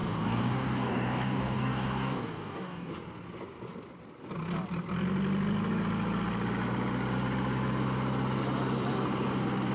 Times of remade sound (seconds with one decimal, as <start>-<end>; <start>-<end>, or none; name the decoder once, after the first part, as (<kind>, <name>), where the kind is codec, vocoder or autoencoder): 0.0-2.9 (codec, DAC)